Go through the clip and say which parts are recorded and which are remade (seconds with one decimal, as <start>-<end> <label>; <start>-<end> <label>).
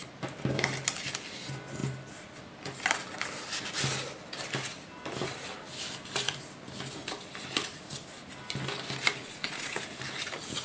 0.0-9.2 recorded; 9.2-9.8 remade; 9.8-10.6 recorded